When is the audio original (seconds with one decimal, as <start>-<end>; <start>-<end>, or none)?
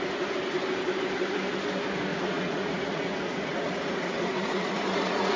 0.0-2.1